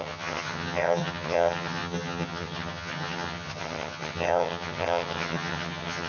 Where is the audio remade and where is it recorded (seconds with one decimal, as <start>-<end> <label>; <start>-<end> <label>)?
0.0-6.1 remade